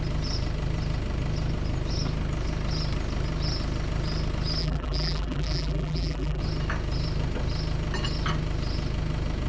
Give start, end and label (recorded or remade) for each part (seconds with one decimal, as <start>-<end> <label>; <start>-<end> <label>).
0.0-4.6 recorded; 4.6-6.4 remade; 6.4-9.5 recorded